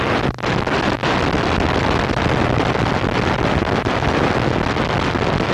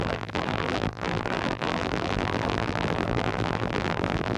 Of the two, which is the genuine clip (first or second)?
first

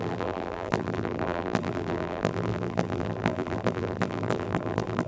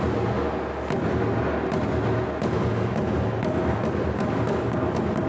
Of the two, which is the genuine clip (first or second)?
second